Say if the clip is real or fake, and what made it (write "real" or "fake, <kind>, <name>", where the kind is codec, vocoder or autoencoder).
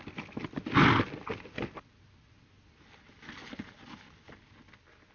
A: real